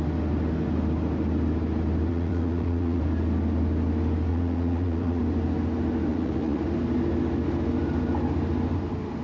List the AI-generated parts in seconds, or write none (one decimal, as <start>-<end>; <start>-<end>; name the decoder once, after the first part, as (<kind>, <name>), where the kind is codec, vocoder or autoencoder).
2.1-3.0 (vocoder, Vocos); 4.3-5.2; 6.1-6.6